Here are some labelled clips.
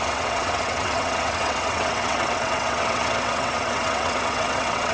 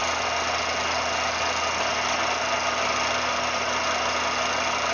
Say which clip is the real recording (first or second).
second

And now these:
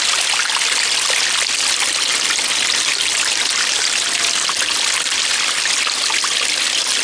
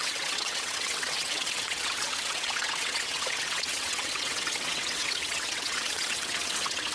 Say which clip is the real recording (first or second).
first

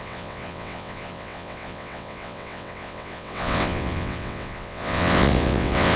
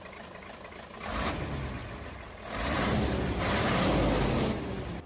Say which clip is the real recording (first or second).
second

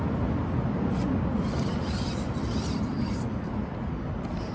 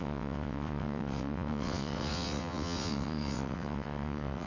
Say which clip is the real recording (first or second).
first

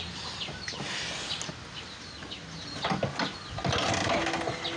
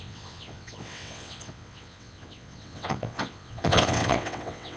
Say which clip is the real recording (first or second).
first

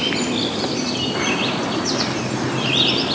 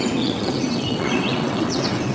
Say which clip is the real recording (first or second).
first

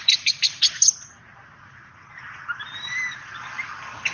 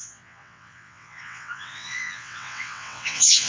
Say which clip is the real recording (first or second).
first